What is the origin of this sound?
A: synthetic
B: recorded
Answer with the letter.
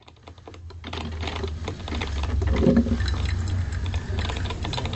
B